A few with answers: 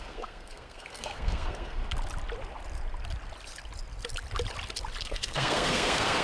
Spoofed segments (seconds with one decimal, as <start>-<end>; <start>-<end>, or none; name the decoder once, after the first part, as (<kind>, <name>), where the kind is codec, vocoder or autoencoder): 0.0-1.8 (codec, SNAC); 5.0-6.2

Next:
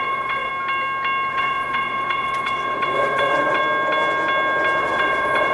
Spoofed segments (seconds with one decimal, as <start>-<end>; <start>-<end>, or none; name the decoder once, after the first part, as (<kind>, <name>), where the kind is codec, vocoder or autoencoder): 0.0-0.5 (vocoder, WaveNeXt); 1.3-3.6; 4.8-5.5

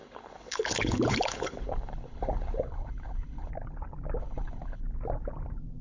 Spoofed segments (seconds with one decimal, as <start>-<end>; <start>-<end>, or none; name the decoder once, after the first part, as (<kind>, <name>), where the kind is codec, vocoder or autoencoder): 0.0-3.5 (codec, HILCodec); 4.2-4.8

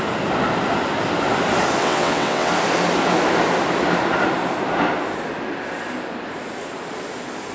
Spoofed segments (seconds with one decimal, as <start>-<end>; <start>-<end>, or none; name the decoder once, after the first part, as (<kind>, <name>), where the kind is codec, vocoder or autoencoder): 1.8-2.5 (vocoder, WaveNeXt)